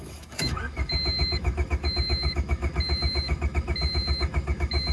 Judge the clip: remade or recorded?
remade